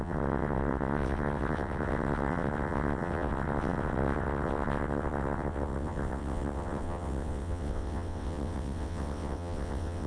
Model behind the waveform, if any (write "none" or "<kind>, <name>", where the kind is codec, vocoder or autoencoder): vocoder, WaveNeXt